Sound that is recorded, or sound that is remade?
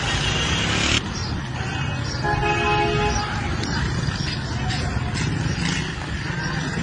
recorded